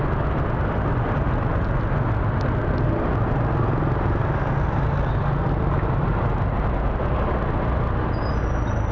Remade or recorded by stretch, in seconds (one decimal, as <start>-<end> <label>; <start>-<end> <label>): 0.0-8.9 recorded